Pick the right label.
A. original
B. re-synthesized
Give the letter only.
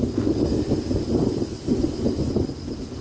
A